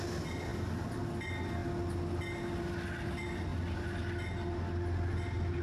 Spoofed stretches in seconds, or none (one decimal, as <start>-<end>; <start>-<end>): none